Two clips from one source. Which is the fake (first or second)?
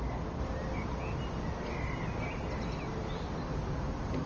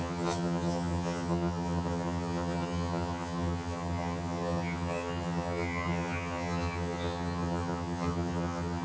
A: second